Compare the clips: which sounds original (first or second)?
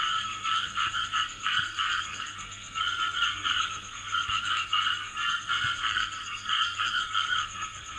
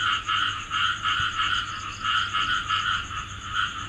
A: second